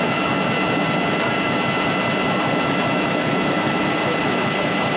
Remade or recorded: recorded